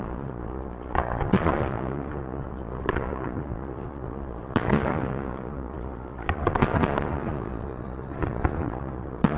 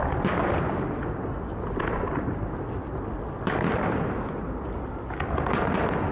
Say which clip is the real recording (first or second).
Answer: second